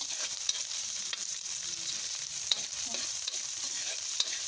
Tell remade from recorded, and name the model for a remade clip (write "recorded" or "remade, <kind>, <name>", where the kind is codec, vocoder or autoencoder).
remade, vocoder, BigVGAN v2